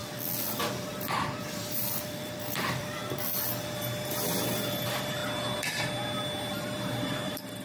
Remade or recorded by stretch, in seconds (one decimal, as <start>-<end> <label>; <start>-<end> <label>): 0.0-0.7 recorded; 0.7-3.0 remade; 3.0-4.5 recorded; 4.5-5.2 remade; 5.2-6.4 recorded; 6.4-7.6 remade